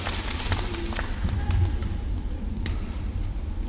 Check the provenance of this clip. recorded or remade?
recorded